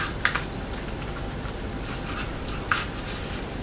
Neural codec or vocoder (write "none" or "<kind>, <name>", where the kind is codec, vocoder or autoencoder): none